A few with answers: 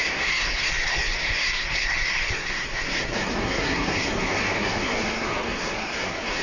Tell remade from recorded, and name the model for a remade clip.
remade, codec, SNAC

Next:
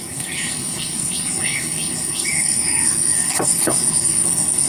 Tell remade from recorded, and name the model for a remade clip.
remade, codec, SNAC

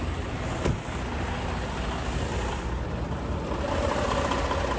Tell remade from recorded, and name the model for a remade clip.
recorded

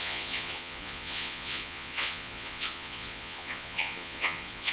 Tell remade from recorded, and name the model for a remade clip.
remade, vocoder, Vocos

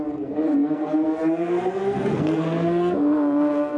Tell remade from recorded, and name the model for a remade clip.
remade, codec, SNAC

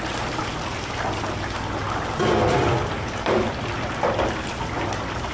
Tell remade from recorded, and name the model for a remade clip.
recorded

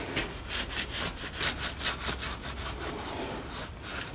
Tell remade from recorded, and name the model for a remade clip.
recorded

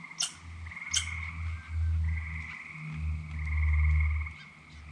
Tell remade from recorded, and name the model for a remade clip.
recorded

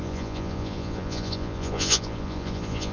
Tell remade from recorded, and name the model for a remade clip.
remade, vocoder, Vocos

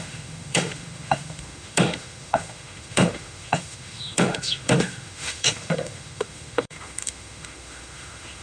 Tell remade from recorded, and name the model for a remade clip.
remade, autoencoder, DAC-VAE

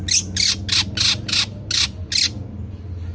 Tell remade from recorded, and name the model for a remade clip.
recorded